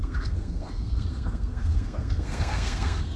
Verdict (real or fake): fake